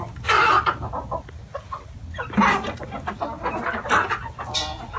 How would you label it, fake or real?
real